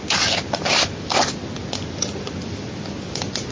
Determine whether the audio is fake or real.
real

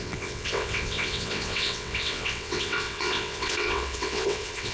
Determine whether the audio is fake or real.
fake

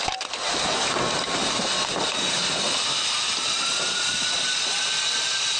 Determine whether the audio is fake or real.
real